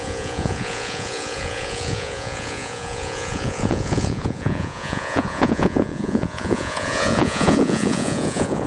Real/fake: fake